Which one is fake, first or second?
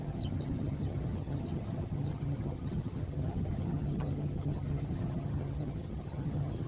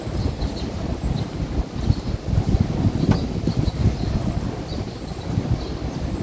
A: first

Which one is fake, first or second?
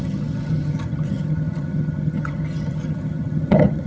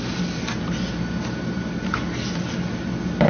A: first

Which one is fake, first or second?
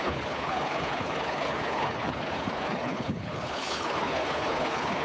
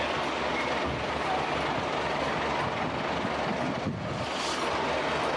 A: first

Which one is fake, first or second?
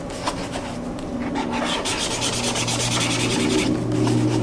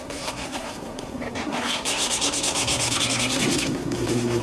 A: second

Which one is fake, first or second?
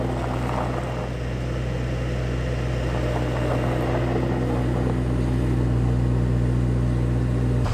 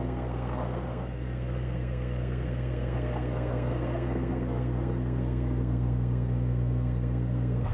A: second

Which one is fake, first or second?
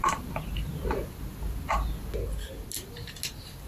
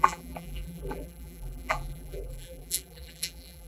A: second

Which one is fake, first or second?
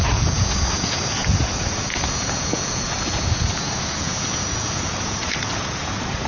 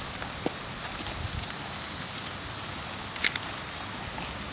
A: first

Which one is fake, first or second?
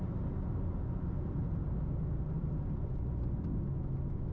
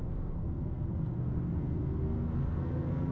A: second